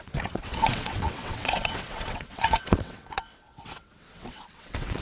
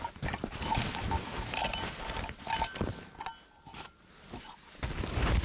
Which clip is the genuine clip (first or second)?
second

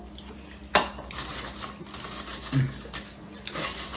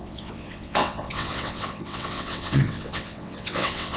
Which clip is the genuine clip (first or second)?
first